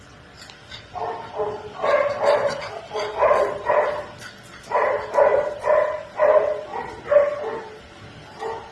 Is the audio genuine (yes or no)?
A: yes